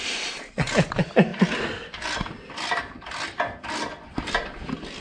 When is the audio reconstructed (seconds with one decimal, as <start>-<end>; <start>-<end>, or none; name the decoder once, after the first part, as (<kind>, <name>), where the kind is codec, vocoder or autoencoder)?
none